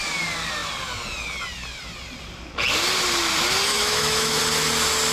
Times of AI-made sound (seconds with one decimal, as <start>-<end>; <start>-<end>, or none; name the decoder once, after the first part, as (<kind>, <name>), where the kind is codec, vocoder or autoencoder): 3.7-4.4 (autoencoder, DAC-VAE)